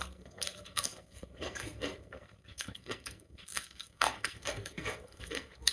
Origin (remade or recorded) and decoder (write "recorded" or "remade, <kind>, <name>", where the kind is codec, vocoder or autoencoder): remade, codec, SNAC